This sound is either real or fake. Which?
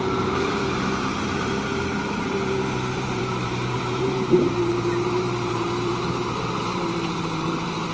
fake